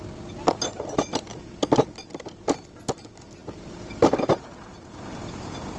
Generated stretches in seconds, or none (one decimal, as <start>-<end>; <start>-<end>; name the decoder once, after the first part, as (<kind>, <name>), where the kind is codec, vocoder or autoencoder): 3.4-4.6 (vocoder, BigVGAN v2)